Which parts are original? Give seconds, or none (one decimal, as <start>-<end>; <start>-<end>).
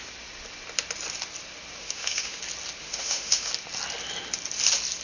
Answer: 0.0-1.8; 2.4-2.8; 3.5-5.0